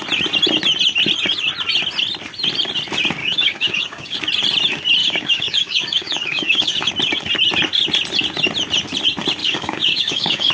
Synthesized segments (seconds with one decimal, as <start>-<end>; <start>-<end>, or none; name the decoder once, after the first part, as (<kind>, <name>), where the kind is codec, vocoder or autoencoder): 3.2-4.2 (codec, DAC); 5.0-6.9; 9.4-10.5